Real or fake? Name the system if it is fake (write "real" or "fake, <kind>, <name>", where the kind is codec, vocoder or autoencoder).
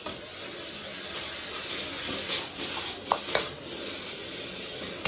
real